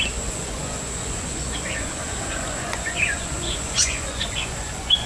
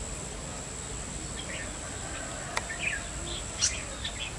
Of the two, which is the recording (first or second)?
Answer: second